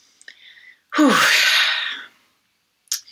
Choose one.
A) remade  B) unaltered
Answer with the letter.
B